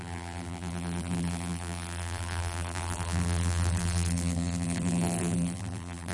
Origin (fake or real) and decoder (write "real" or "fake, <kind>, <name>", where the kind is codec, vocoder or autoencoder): fake, vocoder, BigVGAN v2